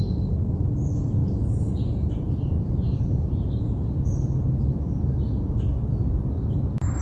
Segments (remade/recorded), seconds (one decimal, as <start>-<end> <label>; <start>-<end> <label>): 0.0-1.2 recorded; 1.2-4.1 remade; 4.1-7.0 recorded

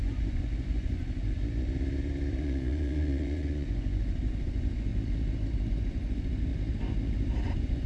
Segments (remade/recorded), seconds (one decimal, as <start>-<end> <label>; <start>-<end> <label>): 0.0-1.4 remade; 1.4-2.4 recorded; 2.4-4.9 remade; 4.9-5.7 recorded; 5.7-6.5 remade; 6.5-7.4 recorded; 7.4-7.9 remade

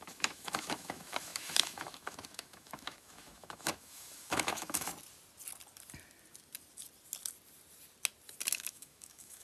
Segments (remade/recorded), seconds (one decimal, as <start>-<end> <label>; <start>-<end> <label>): 0.0-4.9 remade; 4.9-8.5 recorded; 8.5-9.4 remade

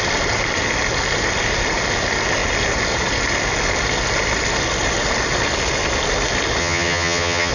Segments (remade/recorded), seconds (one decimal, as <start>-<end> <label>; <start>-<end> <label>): 0.0-6.6 recorded; 6.6-7.5 remade

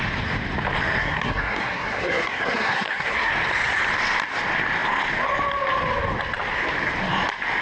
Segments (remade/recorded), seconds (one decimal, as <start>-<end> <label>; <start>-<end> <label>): 0.0-1.0 recorded; 1.0-3.3 remade; 3.3-7.6 recorded

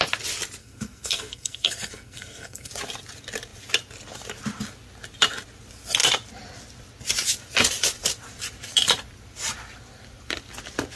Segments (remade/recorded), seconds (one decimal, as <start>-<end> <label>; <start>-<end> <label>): 0.0-0.6 recorded; 0.6-2.7 remade; 2.7-11.0 recorded

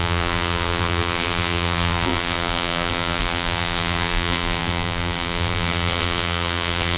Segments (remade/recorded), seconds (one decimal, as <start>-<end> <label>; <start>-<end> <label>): 0.0-7.0 remade